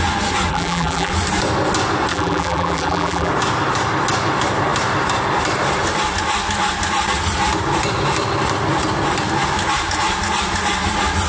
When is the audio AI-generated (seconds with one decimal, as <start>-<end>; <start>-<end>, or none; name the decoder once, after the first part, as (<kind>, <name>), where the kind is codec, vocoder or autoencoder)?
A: 0.5-1.1 (vocoder, BigVGAN v2); 2.1-3.3